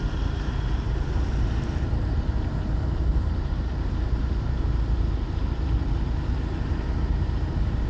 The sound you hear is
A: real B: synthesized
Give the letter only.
B